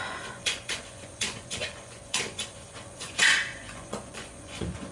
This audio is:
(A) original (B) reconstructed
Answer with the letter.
B